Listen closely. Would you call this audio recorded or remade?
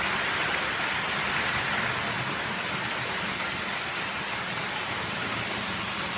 remade